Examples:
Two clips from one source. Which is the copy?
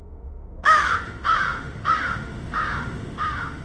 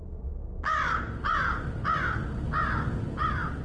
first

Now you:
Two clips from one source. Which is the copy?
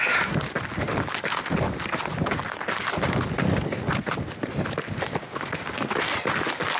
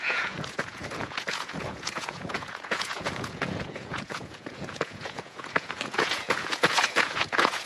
second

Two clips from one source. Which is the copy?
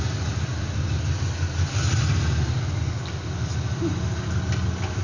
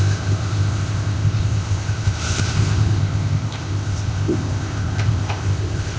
second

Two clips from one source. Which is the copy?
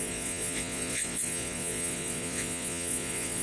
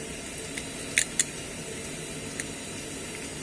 first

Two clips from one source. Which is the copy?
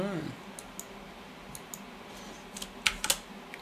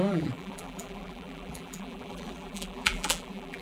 second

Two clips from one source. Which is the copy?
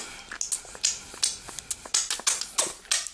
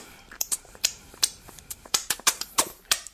second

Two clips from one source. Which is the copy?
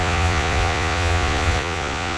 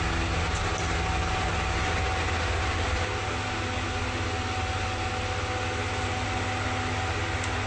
first